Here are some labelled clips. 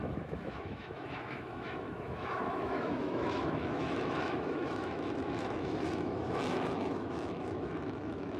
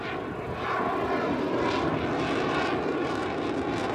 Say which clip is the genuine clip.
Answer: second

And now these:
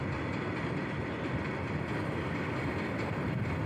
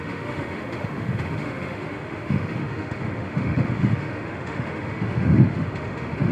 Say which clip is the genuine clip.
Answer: first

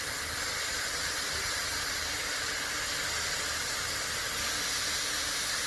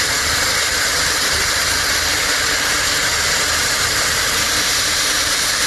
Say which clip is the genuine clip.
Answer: first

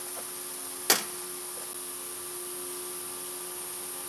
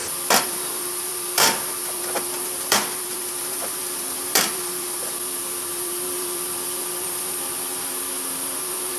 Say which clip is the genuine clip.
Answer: first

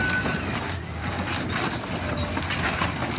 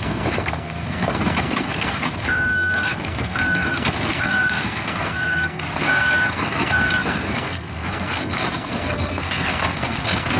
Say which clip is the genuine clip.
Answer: first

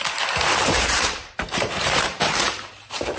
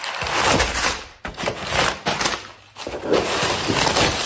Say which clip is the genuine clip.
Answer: second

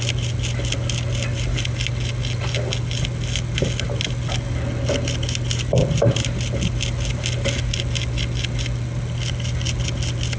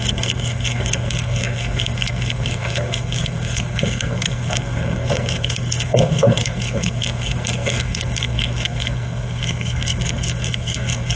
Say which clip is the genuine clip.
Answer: first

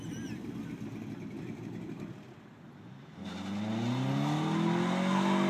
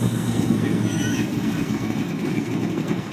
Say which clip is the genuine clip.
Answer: first